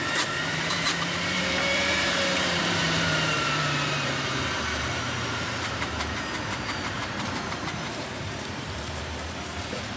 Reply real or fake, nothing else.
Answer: fake